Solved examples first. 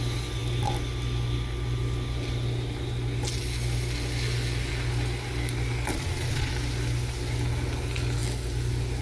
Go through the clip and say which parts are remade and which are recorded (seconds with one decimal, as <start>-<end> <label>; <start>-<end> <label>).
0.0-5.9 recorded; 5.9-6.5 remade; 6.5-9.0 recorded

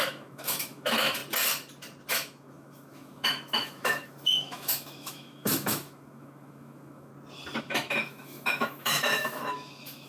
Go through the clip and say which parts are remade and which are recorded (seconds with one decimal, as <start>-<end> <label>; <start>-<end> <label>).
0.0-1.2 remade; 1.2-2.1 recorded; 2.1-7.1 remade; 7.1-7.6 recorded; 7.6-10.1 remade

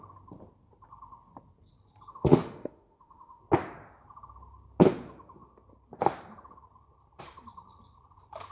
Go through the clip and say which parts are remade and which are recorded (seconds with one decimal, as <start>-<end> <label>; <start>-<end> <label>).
0.0-2.1 recorded; 2.1-3.4 remade; 3.4-8.5 recorded

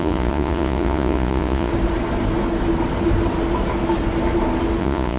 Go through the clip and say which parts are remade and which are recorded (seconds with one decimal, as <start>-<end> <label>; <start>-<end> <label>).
0.0-1.7 remade; 1.7-4.8 recorded; 4.8-5.2 remade